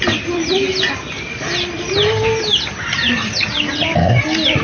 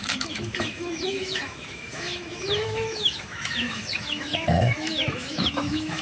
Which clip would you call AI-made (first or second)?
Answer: second